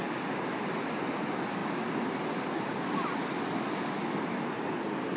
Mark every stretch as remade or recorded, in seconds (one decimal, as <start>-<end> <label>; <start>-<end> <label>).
0.0-5.2 recorded